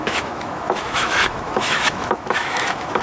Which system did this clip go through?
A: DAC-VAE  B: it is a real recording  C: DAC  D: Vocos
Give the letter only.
A